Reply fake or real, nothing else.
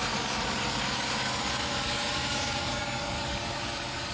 fake